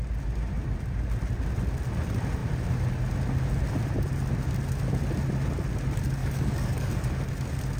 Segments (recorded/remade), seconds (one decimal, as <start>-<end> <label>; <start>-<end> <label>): 0.0-6.2 recorded; 6.2-6.9 remade; 6.9-7.8 recorded